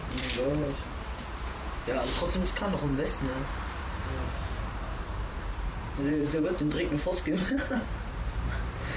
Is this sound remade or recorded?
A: remade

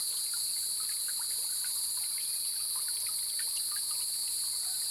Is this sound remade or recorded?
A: recorded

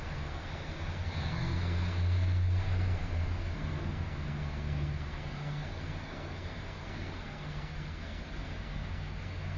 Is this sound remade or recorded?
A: remade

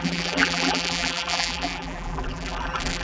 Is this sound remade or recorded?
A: remade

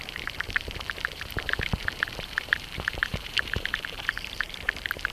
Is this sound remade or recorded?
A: remade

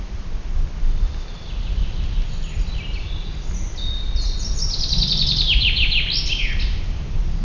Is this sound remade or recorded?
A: recorded